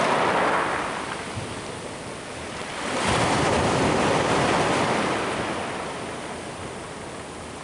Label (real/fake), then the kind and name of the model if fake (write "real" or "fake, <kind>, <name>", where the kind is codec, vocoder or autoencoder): real